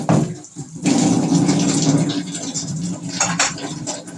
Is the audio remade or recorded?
remade